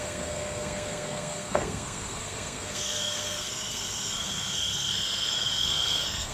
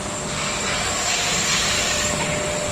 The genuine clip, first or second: second